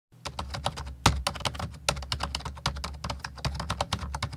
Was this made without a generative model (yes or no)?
yes